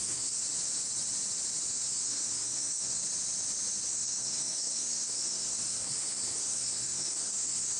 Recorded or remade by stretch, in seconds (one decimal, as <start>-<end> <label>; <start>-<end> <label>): 0.0-0.4 remade; 0.4-1.7 recorded; 1.7-3.0 remade; 3.0-3.9 recorded; 3.9-7.8 remade